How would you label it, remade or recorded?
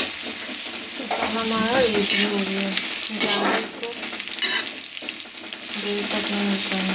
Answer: recorded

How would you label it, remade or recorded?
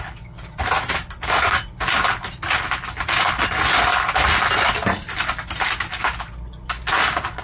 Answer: recorded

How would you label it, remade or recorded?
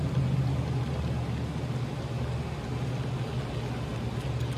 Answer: recorded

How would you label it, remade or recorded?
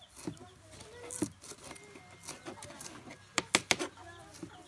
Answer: recorded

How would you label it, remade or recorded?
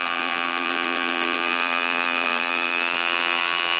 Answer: remade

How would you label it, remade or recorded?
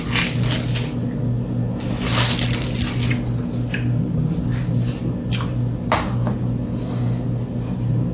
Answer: recorded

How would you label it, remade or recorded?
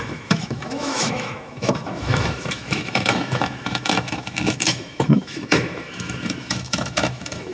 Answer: remade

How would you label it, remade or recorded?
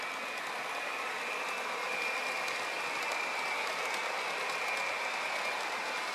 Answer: recorded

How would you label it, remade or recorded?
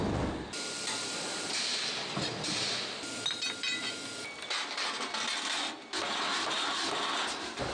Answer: recorded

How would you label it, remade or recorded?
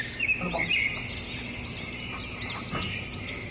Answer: recorded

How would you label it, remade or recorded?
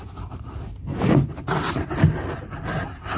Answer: recorded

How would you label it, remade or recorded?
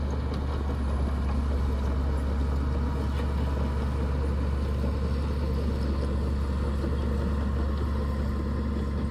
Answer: recorded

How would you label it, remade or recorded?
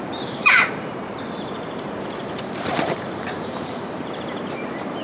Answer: remade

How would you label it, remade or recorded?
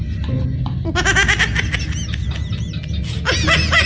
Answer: recorded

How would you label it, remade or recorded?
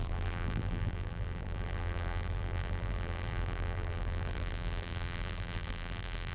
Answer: remade